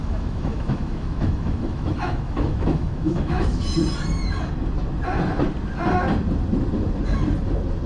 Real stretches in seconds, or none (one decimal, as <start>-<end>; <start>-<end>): 3.6-7.9